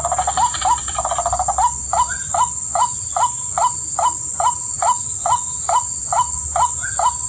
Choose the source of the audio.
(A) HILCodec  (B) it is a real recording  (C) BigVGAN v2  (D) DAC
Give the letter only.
B